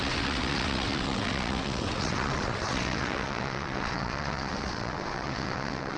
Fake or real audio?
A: fake